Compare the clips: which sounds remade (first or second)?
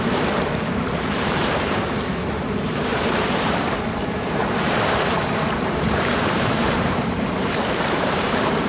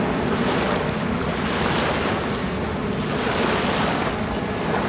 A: first